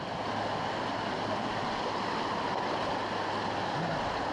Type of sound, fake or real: real